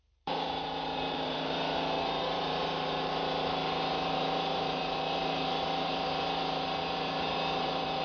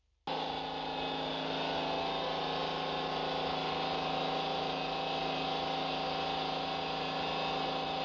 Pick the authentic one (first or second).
second